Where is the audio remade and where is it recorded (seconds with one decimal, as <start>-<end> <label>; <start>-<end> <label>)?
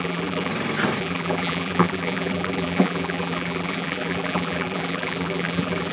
0.0-0.5 remade; 0.5-1.0 recorded; 1.0-5.9 remade